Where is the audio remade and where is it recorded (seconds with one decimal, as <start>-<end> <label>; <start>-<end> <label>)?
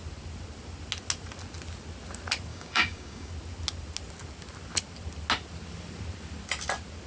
0.0-2.5 recorded; 2.5-3.3 remade; 3.3-7.1 recorded